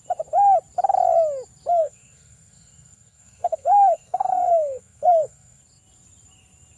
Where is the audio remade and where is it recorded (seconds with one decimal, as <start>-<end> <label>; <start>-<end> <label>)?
0.0-1.8 recorded; 1.8-5.6 remade; 5.6-6.8 recorded